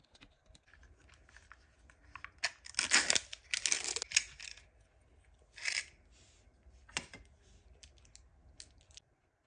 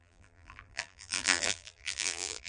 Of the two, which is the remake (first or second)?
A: second